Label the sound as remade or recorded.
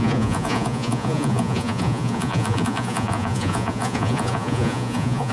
remade